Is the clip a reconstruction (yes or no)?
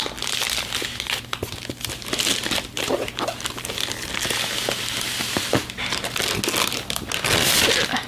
no